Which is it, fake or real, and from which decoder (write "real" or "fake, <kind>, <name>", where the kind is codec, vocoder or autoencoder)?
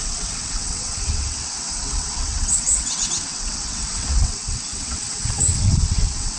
fake, vocoder, WaveNeXt